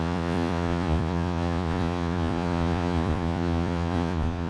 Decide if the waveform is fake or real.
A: fake